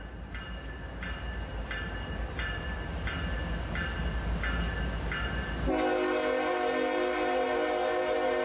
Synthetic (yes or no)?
no